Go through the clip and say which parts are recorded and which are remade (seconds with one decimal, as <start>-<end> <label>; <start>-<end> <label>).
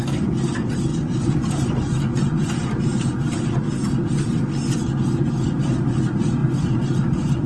0.0-0.9 recorded; 0.9-2.2 remade; 2.2-7.5 recorded